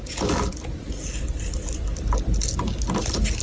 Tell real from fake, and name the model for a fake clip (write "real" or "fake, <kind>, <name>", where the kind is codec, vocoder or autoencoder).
real